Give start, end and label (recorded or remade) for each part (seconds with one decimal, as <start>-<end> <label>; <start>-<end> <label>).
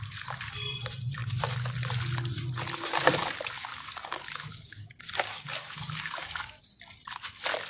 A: 0.0-3.7 recorded; 3.7-6.6 remade; 6.6-7.7 recorded